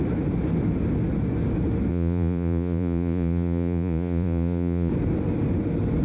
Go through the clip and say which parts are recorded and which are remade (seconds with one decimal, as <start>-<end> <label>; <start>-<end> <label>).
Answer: 0.0-1.9 recorded; 1.9-4.9 remade; 4.9-6.0 recorded